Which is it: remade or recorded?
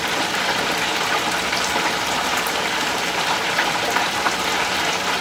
remade